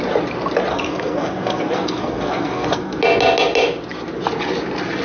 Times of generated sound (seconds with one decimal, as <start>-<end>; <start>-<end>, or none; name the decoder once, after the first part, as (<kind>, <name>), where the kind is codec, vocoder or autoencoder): 0.7-3.0 (codec, SNAC)

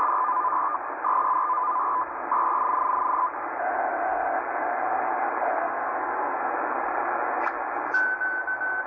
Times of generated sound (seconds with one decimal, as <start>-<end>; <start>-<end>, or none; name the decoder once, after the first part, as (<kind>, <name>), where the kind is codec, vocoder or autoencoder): 5.6-6.4 (codec, SNAC)

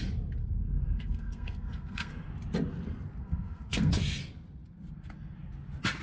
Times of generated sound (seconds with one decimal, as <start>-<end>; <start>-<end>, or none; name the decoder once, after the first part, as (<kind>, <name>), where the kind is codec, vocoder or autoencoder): 0.4-2.1 (codec, SNAC); 3.2-3.9